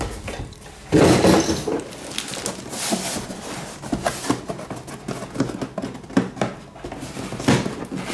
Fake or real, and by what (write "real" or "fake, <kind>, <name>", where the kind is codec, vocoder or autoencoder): real